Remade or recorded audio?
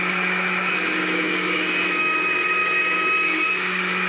remade